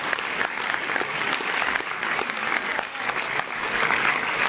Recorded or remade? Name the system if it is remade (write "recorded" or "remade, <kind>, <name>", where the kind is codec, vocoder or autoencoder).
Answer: remade, codec, DAC